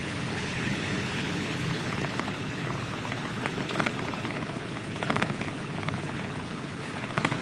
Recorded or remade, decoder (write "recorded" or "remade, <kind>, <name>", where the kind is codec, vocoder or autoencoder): remade, codec, HILCodec